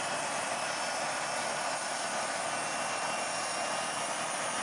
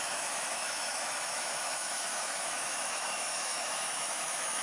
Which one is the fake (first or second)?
second